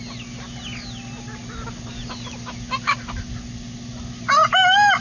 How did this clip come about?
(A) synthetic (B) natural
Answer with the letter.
B